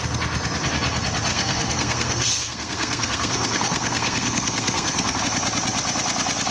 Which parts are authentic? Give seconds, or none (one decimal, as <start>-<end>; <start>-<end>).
0.0-1.3; 5.2-6.5